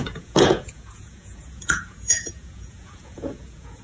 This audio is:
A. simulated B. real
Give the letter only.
A